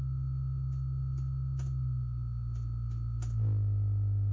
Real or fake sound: real